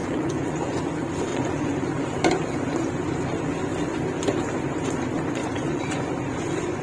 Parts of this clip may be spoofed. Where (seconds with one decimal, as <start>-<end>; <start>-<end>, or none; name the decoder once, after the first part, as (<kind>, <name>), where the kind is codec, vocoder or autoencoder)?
0.0-0.8 (vocoder, Vocos); 1.3-2.0; 5.4-6.8